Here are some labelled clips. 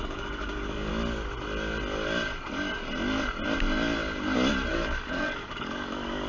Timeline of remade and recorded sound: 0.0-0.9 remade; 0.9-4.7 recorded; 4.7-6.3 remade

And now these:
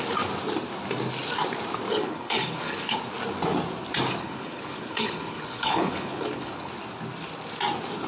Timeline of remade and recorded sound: 0.0-1.9 recorded; 1.9-3.0 remade; 3.0-4.2 recorded; 4.2-6.7 remade; 6.7-8.1 recorded

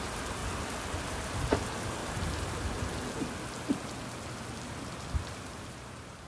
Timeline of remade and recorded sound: 0.0-0.4 remade; 0.4-0.9 recorded; 0.9-2.0 remade; 2.0-5.3 recorded; 5.3-6.3 remade